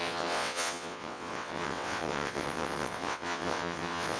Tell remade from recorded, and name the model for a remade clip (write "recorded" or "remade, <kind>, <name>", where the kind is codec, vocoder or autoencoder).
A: remade, vocoder, WaveNeXt